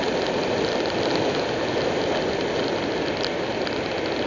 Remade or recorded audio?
recorded